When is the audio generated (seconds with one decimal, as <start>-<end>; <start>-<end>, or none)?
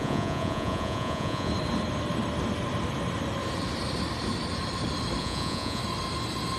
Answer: 0.0-1.5; 5.2-5.8